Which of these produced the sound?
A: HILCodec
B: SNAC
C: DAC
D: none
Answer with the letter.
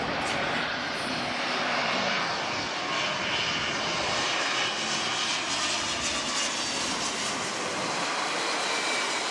D